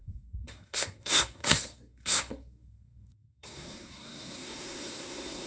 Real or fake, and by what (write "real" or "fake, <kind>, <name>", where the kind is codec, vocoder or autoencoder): fake, codec, SNAC